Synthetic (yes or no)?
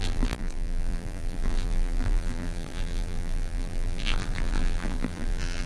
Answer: yes